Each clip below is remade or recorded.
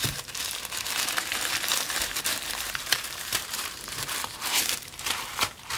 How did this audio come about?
remade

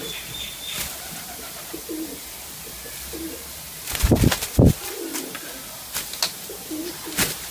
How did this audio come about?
recorded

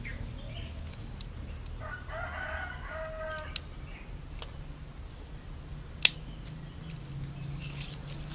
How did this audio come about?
recorded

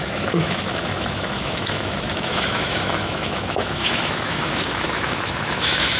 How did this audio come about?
remade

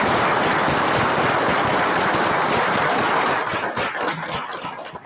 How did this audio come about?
recorded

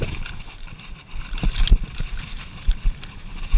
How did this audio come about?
recorded